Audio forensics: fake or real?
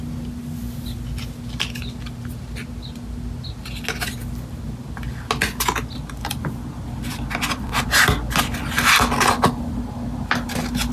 real